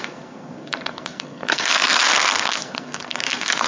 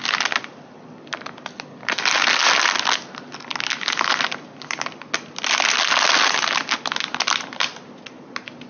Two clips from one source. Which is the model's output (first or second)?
first